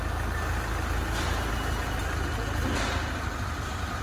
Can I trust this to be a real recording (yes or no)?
yes